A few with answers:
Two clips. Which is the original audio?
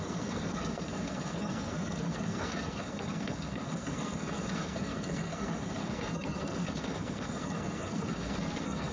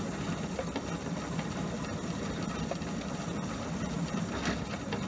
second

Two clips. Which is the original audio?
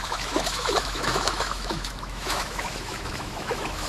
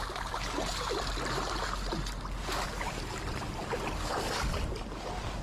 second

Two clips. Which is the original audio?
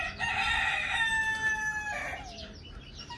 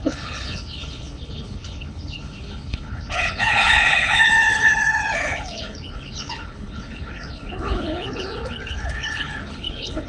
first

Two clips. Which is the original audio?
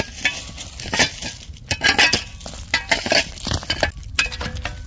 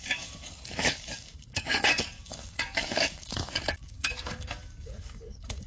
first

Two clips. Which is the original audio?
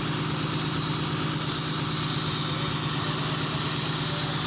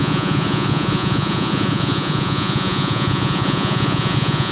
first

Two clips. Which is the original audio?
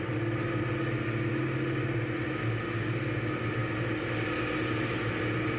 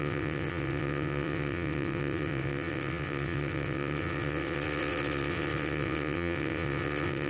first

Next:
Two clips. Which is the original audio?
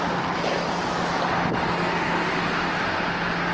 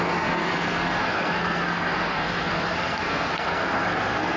first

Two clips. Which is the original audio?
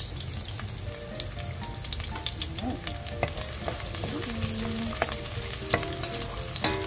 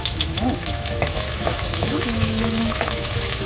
first